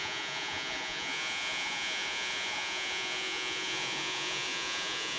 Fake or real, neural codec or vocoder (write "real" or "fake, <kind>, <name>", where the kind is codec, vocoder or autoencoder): fake, vocoder, Vocos